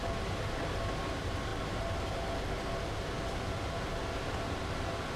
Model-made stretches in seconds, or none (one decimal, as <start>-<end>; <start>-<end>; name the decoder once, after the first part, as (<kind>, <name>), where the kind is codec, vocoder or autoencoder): none